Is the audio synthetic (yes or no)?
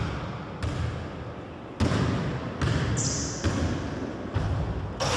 no